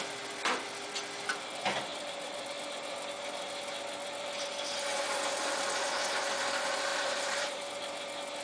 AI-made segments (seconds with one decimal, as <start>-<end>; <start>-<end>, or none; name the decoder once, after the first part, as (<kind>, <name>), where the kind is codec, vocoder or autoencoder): 1.9-2.4 (vocoder, BigVGAN v2); 6.9-7.7